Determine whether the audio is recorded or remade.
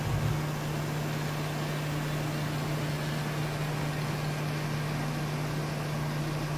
recorded